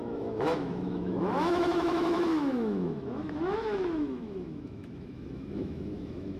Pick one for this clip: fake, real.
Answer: fake